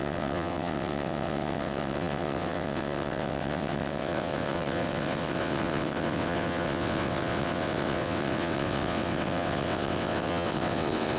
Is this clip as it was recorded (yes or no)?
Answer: no